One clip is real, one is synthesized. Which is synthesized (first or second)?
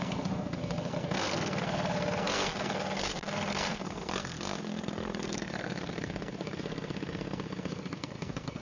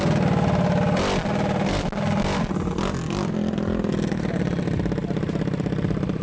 first